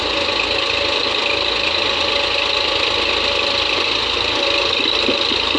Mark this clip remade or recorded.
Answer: recorded